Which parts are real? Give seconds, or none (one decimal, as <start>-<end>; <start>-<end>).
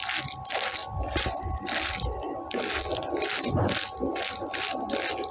0.0-5.3